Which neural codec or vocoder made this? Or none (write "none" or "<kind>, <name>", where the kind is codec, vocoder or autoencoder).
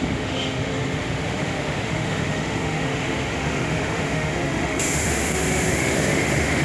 autoencoder, DAC-VAE